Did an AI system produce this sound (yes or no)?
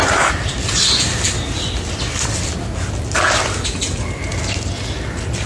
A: no